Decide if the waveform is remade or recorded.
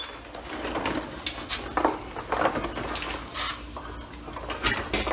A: recorded